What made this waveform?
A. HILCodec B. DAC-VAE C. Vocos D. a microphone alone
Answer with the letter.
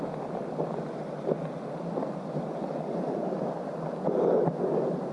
D